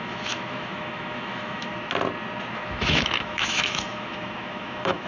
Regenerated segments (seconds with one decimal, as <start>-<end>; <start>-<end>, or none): 0.0-1.7; 2.5-5.1